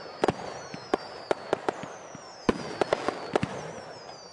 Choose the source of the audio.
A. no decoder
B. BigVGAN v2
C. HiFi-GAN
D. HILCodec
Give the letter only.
A